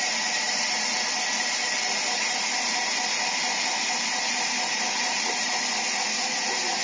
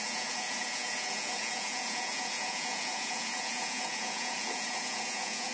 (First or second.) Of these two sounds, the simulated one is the second